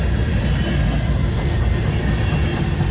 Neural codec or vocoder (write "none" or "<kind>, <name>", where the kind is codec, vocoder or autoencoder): none